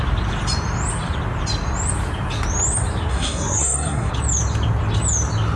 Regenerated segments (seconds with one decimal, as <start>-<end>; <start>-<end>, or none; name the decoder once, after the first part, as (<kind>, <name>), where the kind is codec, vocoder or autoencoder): 3.1-4.1 (codec, SNAC)